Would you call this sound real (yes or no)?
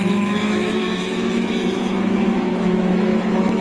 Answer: no